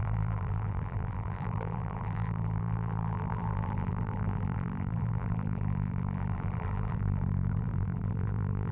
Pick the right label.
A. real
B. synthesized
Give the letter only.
B